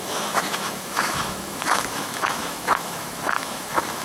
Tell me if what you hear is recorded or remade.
remade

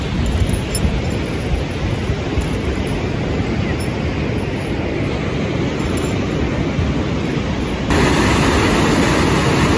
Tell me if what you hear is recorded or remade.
recorded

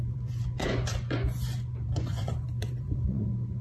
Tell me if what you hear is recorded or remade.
remade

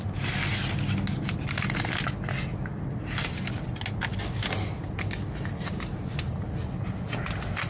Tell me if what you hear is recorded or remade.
recorded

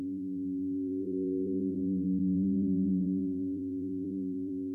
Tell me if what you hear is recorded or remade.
remade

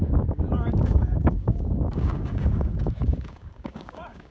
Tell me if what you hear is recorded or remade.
remade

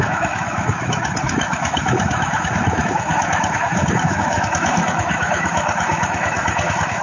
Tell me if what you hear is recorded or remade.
remade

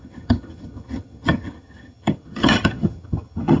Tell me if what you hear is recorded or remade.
remade